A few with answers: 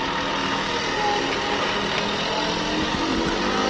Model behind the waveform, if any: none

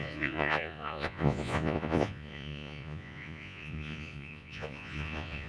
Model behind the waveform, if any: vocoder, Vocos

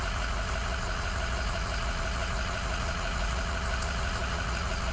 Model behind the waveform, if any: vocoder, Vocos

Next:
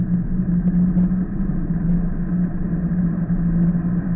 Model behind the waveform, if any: none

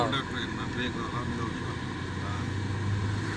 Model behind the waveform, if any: none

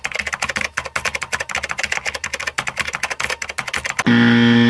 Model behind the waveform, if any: none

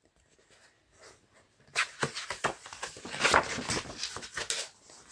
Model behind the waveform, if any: none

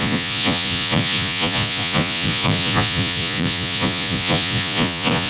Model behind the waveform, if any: vocoder, Vocos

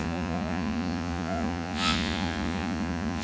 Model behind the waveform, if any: vocoder, Vocos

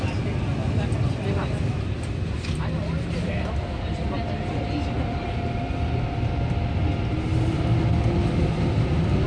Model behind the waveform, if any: none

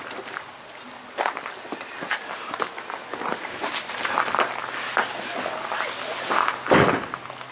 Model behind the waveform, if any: none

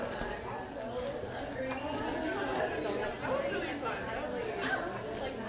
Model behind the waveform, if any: none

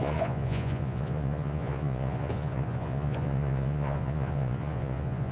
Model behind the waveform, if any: vocoder, Vocos